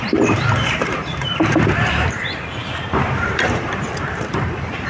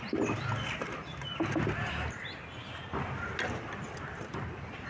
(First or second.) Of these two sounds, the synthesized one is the first